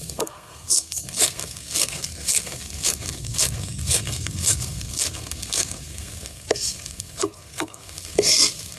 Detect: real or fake fake